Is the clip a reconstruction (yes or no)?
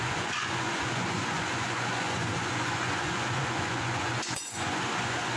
yes